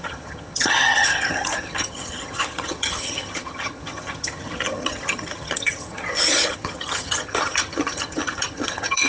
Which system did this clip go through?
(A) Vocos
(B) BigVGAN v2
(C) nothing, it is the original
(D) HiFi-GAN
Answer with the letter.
D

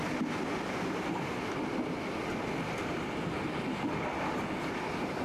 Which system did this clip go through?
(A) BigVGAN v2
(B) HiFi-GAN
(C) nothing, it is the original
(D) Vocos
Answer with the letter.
C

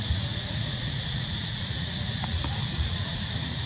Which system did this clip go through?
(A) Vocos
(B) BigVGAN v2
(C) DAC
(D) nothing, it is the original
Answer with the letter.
A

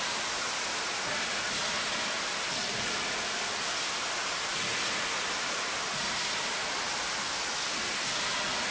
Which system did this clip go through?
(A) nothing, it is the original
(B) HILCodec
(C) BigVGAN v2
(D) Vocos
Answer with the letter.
A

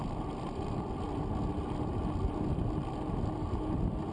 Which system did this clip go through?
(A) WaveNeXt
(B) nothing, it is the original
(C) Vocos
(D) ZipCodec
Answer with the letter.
B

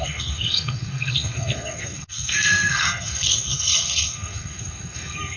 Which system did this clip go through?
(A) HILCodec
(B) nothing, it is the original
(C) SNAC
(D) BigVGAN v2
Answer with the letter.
C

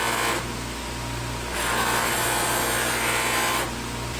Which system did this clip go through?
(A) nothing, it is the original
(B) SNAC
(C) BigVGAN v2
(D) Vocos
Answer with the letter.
A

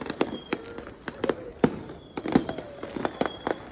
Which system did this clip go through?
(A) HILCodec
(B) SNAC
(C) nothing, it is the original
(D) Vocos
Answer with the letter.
C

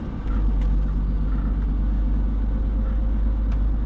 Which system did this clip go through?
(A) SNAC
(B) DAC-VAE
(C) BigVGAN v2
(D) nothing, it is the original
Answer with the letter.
D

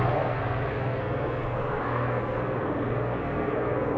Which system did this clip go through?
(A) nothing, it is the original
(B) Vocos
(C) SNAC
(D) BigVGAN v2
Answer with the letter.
C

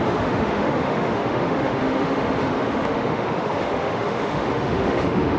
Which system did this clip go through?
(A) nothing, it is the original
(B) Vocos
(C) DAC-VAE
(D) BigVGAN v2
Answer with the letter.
C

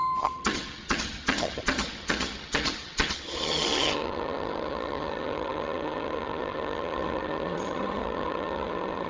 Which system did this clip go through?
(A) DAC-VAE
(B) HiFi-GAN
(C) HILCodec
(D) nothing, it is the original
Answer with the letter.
B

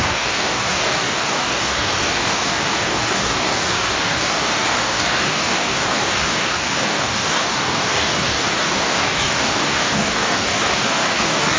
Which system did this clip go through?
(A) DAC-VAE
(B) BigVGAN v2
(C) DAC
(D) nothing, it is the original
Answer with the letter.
C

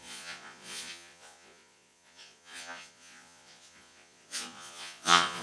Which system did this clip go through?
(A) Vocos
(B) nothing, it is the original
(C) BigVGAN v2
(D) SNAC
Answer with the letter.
A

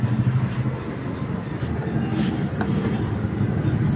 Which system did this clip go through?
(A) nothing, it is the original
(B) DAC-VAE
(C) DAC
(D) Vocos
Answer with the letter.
A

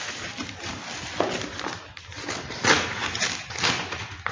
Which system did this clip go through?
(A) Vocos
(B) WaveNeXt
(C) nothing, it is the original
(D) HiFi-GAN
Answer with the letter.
C